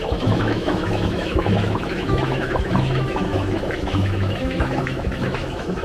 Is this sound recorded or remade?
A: remade